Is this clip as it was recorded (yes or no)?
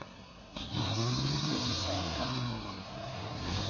no